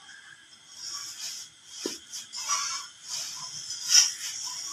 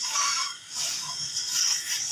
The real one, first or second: first